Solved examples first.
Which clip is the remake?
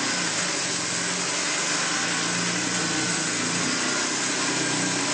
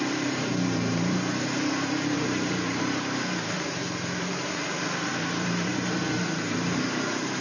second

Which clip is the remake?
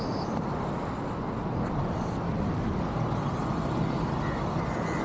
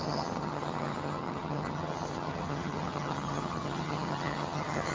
second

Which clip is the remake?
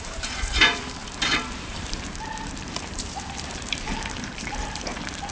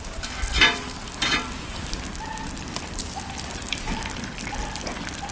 first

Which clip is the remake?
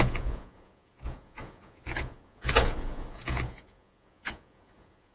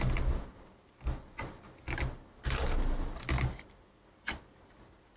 first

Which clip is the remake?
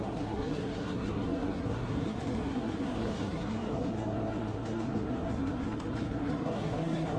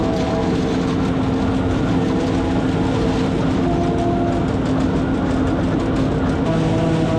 first